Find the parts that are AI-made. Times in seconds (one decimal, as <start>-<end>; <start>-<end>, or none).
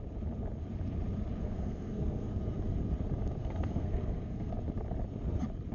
1.4-2.3; 3.4-4.5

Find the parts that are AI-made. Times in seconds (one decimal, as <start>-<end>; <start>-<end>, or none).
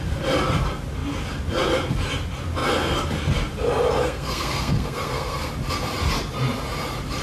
4.0-5.5